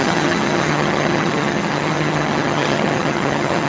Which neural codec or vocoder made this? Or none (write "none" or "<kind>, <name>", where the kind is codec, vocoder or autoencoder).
vocoder, HiFi-GAN